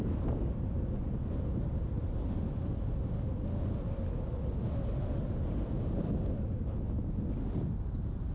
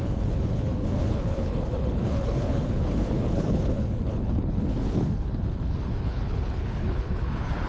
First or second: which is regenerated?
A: second